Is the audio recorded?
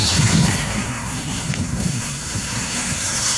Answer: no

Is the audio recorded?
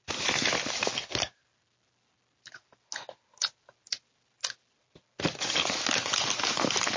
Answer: yes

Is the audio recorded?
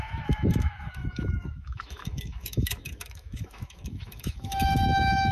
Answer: no